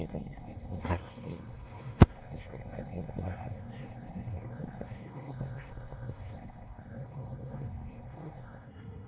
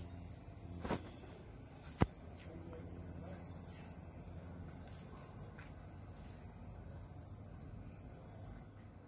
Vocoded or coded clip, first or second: first